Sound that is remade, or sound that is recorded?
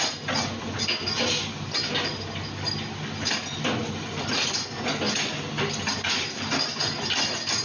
recorded